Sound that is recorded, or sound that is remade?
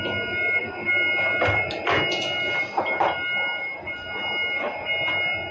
recorded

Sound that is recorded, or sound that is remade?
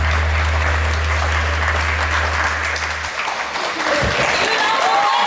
recorded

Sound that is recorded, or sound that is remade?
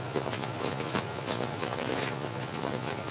remade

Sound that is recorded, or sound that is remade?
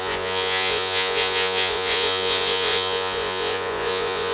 remade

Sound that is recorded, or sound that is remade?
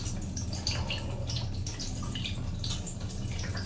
recorded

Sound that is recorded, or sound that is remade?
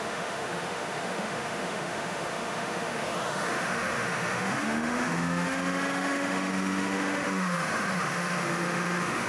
remade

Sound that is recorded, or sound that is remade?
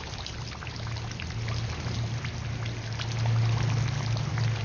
recorded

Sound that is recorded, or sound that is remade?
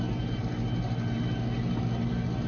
recorded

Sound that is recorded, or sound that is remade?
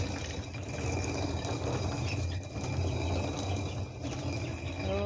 recorded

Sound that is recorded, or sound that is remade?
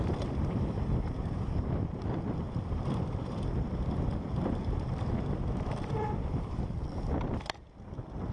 remade